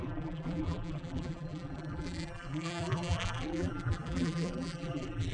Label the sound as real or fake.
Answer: fake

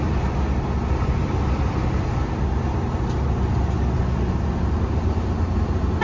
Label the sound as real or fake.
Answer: real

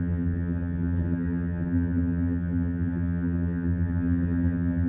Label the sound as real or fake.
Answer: fake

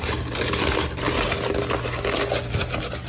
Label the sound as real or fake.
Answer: real